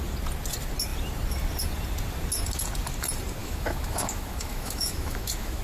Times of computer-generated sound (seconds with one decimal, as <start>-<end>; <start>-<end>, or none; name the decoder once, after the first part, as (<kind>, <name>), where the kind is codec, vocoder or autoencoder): 3.4-5.6 (autoencoder, DAC-VAE)